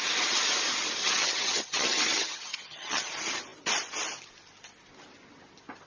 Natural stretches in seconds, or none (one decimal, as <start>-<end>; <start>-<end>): 0.0-1.0; 3.1-5.9